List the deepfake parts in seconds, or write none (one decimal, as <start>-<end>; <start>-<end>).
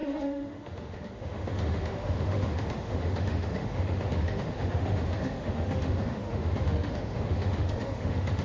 0.0-8.4